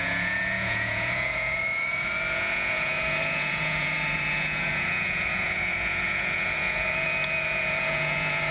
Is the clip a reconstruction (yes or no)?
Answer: yes